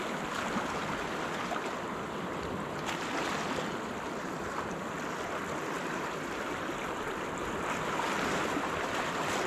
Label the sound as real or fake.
real